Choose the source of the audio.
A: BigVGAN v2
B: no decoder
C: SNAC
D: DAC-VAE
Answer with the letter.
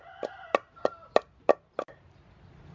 B